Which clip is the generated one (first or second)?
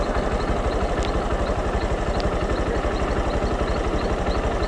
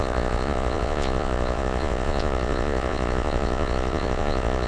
second